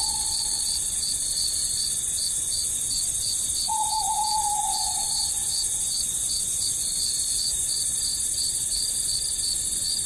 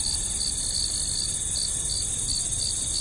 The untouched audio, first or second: second